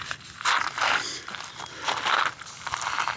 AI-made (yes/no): no